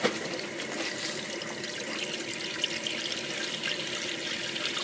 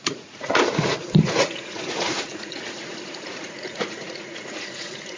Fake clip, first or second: second